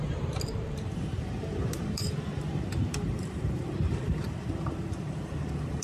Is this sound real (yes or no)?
no